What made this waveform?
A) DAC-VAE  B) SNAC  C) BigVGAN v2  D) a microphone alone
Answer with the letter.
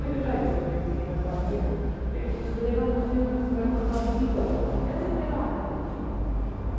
D